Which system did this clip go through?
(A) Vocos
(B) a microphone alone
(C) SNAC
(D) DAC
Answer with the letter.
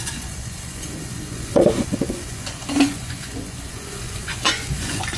A